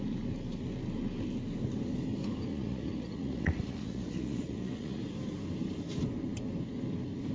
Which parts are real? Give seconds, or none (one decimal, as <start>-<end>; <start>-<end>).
0.0-2.5; 5.0-7.3